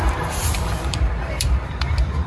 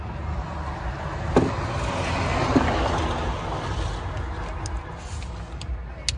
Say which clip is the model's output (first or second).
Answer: first